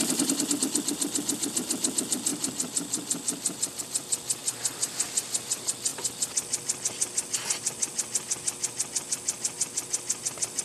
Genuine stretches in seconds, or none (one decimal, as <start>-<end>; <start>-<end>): 0.0-2.3; 3.8-10.6